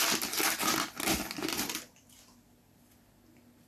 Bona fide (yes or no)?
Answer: yes